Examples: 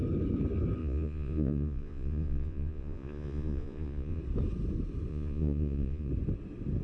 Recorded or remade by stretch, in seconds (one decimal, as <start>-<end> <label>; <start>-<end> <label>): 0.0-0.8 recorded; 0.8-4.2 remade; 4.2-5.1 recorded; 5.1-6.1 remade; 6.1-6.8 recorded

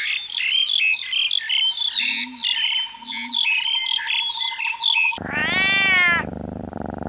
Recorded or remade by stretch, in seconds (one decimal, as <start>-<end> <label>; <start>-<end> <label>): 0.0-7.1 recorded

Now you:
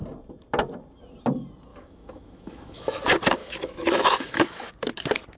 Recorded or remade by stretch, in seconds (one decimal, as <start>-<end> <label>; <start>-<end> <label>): 0.0-1.7 recorded; 1.7-3.0 remade; 3.0-3.4 recorded; 3.4-4.7 remade; 4.7-5.4 recorded

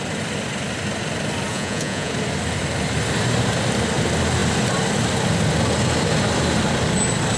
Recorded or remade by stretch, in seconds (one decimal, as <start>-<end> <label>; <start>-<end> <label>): 0.0-1.5 recorded; 1.5-2.1 remade; 2.1-7.4 recorded

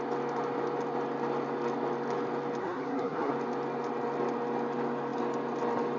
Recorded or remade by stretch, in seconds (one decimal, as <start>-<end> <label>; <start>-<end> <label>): 0.0-2.6 recorded; 2.6-3.3 remade; 3.3-6.0 recorded

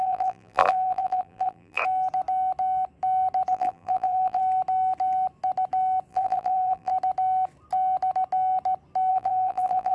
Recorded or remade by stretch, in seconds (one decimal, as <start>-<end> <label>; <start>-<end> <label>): 0.0-1.8 remade; 1.8-3.5 recorded; 3.5-4.4 remade; 4.4-6.1 recorded; 6.1-6.9 remade; 6.9-9.1 recorded; 9.1-9.9 remade